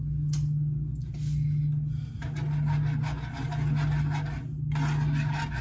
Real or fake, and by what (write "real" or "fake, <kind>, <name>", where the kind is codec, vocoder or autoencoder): real